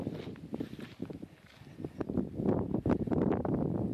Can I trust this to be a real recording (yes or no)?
yes